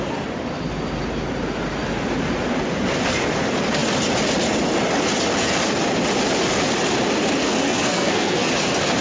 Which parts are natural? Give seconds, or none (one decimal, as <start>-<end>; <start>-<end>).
0.0-7.4; 8.5-9.0